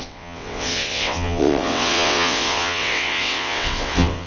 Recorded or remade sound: remade